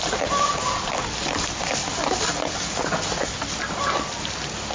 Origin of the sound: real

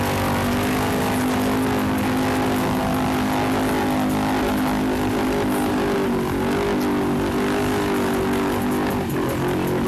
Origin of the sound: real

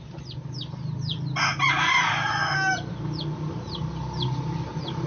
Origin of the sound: real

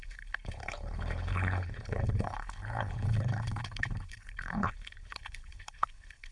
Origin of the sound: fake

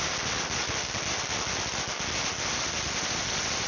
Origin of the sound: real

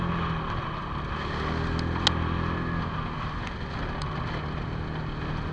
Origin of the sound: real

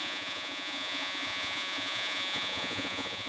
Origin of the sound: fake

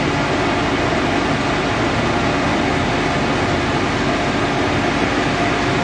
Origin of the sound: real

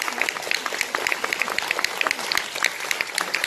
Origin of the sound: real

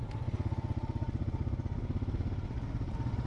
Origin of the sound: real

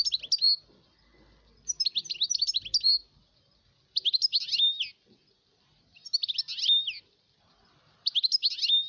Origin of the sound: real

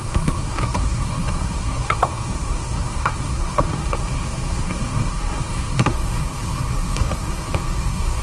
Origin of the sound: fake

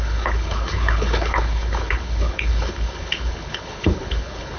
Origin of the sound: fake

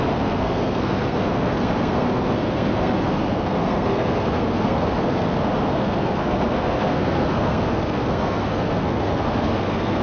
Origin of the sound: fake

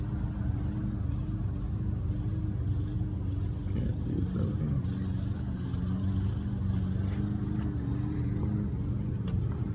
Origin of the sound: real